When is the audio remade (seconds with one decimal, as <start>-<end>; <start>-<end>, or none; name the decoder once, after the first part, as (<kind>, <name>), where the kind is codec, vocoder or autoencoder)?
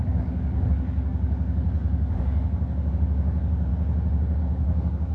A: 0.0-3.7 (codec, DAC); 4.4-5.1